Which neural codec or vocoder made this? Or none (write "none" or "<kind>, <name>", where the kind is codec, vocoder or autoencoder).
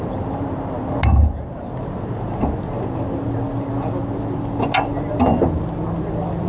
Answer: none